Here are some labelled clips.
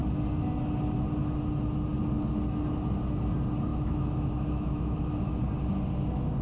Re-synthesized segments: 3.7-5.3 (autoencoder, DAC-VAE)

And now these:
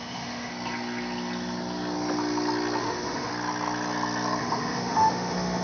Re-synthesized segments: 0.0-0.5 (autoencoder, DAC-VAE); 2.8-3.3; 4.4-5.6

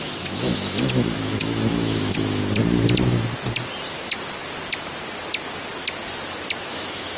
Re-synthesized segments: 0.0-2.4 (autoencoder, DAC-VAE); 6.7-7.2

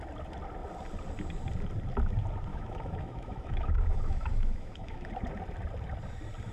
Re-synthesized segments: 2.5-5.1 (autoencoder, DAC-VAE)

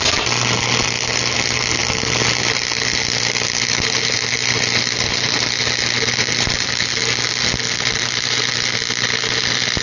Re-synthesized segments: none

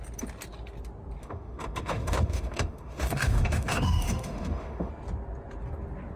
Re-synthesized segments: 1.2-4.9 (autoencoder, DAC-VAE)

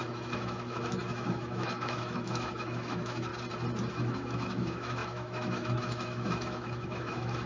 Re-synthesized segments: 0.0-3.3 (autoencoder, DAC-VAE); 3.9-7.5